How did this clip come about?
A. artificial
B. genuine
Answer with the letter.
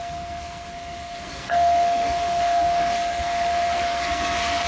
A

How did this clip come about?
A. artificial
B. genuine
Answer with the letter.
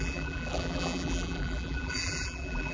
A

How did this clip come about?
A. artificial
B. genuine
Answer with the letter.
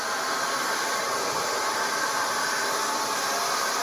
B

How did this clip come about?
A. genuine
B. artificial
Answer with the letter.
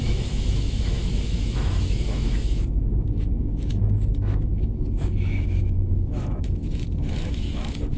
B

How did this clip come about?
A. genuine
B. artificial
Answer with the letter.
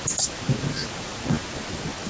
A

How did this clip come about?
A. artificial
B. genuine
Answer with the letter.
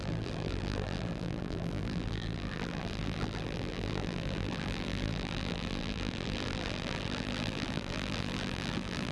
A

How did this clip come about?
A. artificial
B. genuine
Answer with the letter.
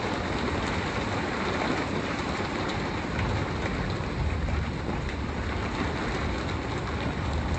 B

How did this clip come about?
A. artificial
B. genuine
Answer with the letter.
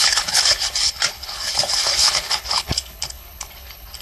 A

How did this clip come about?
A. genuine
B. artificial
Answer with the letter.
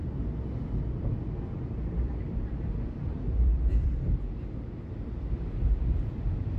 B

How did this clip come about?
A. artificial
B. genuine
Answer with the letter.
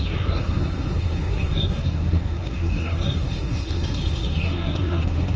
A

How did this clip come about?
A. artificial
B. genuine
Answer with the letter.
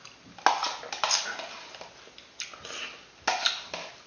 B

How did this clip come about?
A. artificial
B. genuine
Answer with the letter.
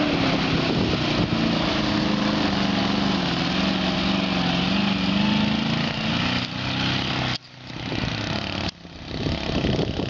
B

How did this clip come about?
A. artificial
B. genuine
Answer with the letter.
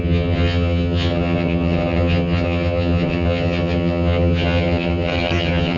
A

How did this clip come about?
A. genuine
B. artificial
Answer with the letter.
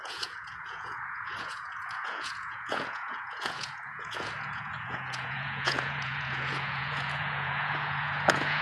B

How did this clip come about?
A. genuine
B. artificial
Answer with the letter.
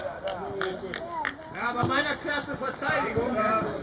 B